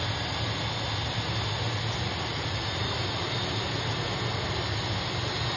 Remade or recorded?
recorded